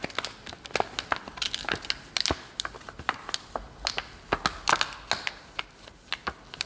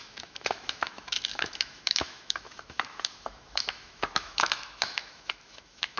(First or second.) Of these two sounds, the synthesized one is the second